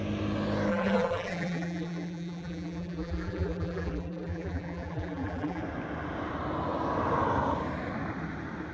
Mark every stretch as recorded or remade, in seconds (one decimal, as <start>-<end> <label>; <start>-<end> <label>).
0.0-0.7 recorded; 0.7-5.6 remade; 5.6-8.7 recorded